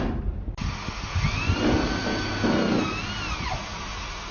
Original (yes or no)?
yes